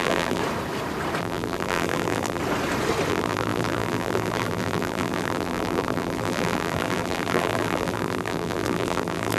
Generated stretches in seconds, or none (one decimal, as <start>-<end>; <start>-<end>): 0.0-0.4; 1.2-2.4; 3.1-9.4